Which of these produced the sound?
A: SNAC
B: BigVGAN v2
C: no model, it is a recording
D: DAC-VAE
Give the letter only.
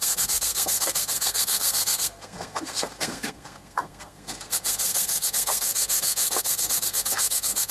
A